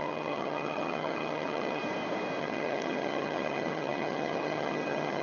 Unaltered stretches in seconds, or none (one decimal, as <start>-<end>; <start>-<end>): 1.8-2.4